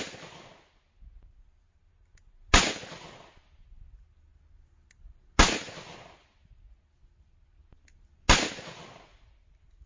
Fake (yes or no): no